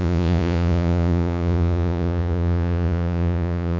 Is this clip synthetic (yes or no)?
yes